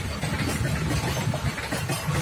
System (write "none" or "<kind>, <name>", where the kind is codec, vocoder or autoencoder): none